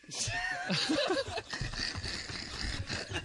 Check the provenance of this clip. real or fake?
real